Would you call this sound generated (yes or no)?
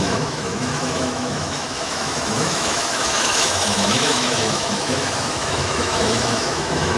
yes